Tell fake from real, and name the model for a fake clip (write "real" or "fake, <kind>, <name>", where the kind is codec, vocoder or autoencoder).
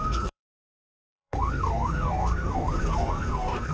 fake, codec, SNAC